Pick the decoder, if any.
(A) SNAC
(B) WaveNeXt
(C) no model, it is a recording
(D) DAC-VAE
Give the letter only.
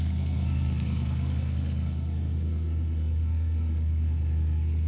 A